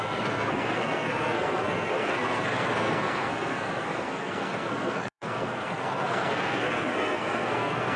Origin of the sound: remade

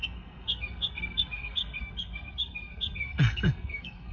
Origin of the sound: remade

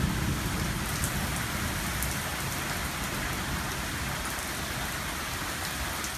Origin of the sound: recorded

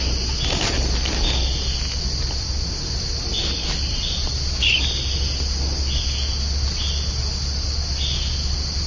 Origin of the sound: recorded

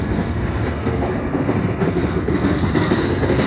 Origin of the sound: remade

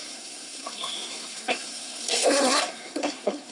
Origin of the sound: remade